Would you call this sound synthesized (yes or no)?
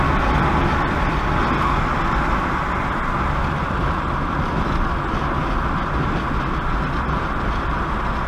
no